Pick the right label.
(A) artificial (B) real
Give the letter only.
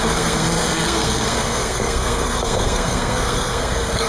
A